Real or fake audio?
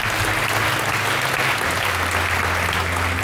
real